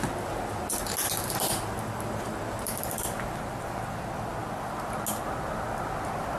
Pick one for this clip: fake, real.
real